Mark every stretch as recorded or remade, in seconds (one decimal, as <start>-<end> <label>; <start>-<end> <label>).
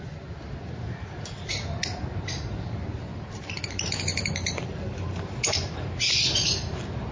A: 0.0-7.1 recorded